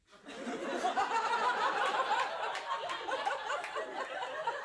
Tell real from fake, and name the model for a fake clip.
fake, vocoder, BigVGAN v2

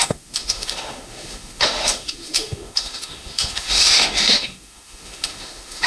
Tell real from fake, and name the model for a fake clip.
fake, autoencoder, DAC-VAE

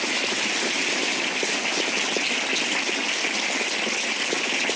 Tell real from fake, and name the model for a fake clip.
real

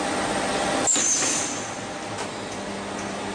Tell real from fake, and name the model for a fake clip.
real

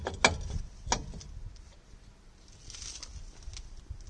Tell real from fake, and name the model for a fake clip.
real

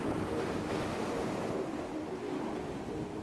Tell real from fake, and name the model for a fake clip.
real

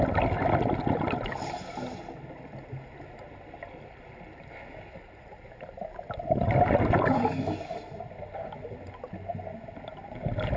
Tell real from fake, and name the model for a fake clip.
real